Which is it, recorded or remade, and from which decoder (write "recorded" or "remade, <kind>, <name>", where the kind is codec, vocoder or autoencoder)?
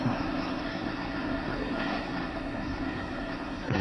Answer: remade, codec, SNAC